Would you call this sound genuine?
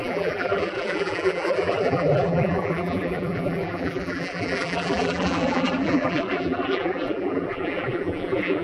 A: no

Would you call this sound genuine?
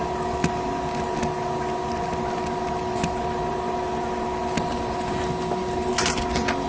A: yes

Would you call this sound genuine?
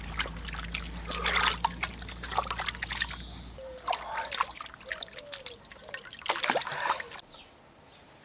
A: yes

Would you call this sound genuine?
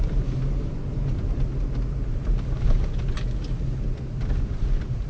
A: yes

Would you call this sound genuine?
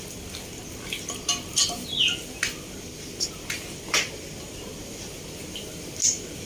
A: yes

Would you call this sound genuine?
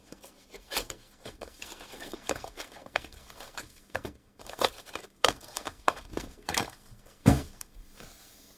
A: no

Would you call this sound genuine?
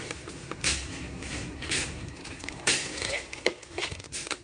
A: no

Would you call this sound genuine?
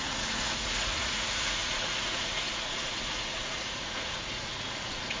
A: no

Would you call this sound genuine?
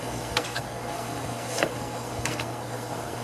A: no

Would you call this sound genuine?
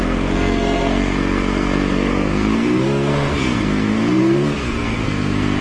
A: no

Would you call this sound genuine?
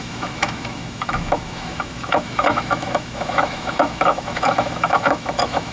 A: no